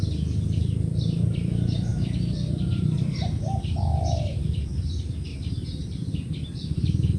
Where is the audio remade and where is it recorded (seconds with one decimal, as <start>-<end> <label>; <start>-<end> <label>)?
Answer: 0.0-1.9 remade; 1.9-2.7 recorded; 2.7-5.3 remade; 5.3-5.9 recorded; 5.9-7.2 remade